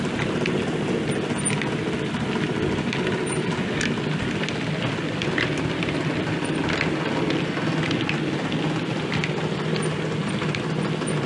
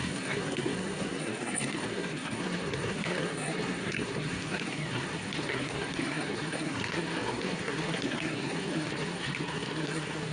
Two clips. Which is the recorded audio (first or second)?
first